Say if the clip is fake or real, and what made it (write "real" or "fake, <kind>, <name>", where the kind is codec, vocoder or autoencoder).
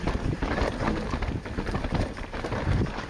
real